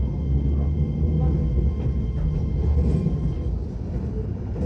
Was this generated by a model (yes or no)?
no